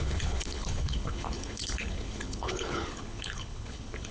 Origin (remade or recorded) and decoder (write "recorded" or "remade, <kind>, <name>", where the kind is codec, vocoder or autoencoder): remade, codec, HILCodec